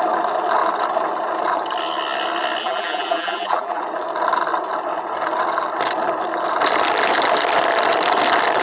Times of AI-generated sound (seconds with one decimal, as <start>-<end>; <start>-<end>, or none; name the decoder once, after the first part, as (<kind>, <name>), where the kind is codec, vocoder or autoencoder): 2.6-3.8 (vocoder, BigVGAN v2)